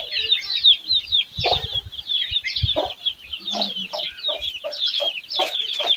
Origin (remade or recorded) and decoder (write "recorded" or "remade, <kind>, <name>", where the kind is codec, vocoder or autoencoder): remade, vocoder, BigVGAN v2